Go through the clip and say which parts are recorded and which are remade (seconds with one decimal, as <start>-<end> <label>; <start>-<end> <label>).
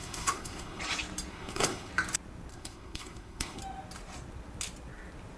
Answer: 0.0-0.8 remade; 0.8-1.3 recorded; 1.3-1.9 remade; 1.9-2.5 recorded; 2.5-3.6 remade; 3.6-5.4 recorded